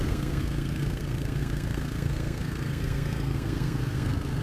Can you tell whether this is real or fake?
fake